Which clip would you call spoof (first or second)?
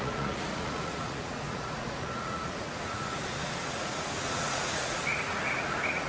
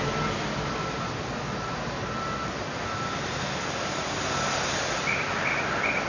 first